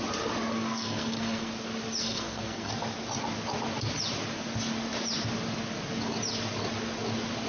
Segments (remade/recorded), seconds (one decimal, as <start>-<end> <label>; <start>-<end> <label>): 0.0-0.5 recorded; 0.5-1.5 remade; 1.5-2.0 recorded; 2.0-2.7 remade; 2.7-7.5 recorded